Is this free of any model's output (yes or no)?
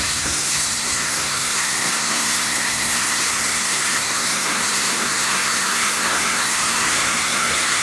no